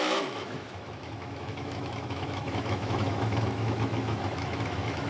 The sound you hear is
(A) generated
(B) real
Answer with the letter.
A